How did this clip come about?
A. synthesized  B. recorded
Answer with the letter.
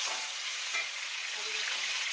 A